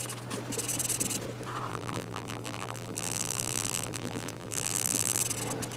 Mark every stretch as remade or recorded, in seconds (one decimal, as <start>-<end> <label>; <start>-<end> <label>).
0.0-1.7 recorded; 1.7-5.2 remade; 5.2-5.8 recorded